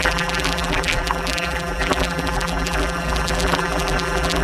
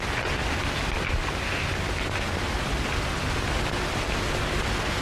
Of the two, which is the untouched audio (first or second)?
second